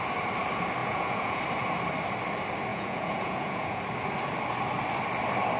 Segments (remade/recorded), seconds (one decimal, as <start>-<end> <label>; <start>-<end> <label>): 0.0-0.8 recorded; 0.8-1.4 remade; 1.4-2.7 recorded; 2.7-3.8 remade; 3.8-5.6 recorded